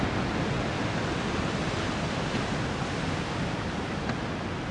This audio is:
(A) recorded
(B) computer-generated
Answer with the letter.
A